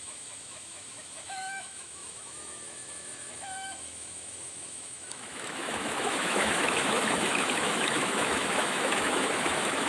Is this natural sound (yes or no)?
no